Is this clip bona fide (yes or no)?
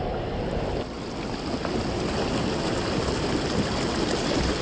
yes